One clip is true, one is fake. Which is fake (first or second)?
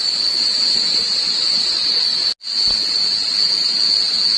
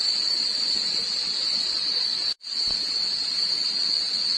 second